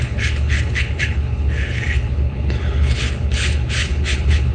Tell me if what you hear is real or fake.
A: fake